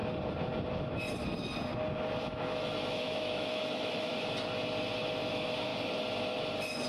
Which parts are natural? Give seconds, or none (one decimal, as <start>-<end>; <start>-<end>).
0.0-2.2; 4.1-5.3; 5.7-6.9